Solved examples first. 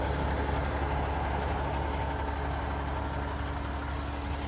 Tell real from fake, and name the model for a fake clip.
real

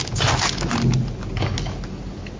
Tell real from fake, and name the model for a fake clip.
real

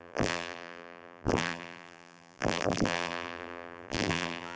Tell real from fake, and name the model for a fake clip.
fake, vocoder, BigVGAN v2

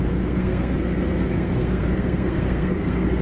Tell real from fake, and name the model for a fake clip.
fake, codec, SNAC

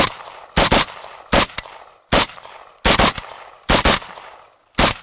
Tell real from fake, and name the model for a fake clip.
real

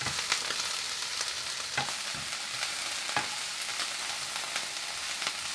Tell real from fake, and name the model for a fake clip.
real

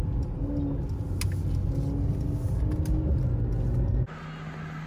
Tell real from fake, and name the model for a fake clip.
real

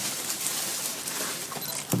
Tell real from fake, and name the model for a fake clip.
real